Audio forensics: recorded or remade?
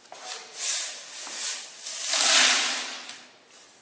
recorded